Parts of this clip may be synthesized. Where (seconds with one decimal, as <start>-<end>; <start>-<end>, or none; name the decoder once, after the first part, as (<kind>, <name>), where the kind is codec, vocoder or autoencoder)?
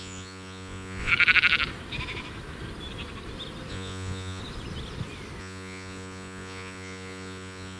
0.0-1.1 (vocoder, Vocos); 3.7-4.4; 5.4-7.8